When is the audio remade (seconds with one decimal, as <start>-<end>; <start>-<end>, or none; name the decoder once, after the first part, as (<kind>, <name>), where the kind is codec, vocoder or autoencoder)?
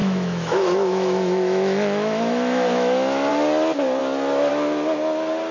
0.0-3.3 (autoencoder, DAC-VAE)